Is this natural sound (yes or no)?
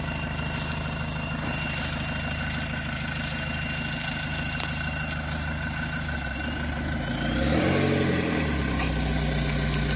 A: yes